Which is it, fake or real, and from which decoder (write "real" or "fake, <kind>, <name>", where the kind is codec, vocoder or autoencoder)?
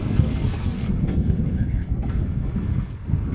fake, codec, SNAC